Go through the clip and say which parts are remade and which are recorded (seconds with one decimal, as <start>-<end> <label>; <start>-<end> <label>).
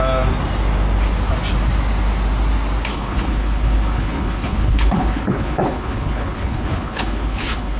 0.0-2.9 recorded; 2.9-7.8 remade